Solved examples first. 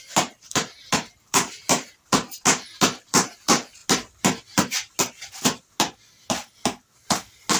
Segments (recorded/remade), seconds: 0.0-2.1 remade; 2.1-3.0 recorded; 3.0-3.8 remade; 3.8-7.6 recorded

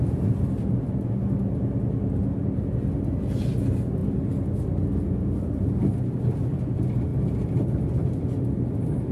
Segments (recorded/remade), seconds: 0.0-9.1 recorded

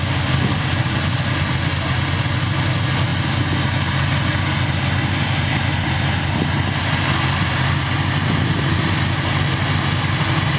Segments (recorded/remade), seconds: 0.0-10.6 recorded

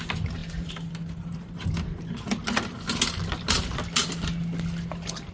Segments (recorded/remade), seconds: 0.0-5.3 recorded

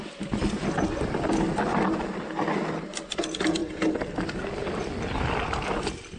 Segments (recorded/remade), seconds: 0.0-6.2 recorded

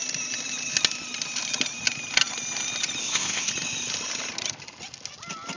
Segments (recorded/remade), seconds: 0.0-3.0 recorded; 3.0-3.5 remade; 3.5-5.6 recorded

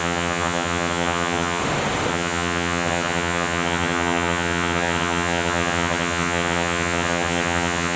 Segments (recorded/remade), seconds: 0.0-1.6 remade; 1.6-2.1 recorded; 2.1-8.0 remade

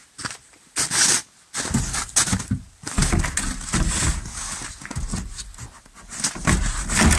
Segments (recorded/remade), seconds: 0.0-7.2 recorded